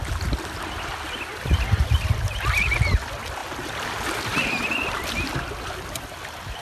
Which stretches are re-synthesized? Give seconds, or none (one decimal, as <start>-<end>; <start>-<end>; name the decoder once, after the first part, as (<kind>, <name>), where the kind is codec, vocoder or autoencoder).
none